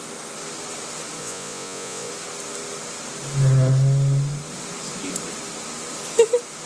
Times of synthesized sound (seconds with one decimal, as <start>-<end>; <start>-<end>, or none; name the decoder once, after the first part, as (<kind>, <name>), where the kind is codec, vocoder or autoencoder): 1.2-2.1 (vocoder, Vocos)